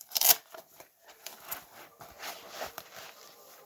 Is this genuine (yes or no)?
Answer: no